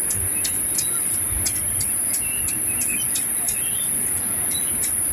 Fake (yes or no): no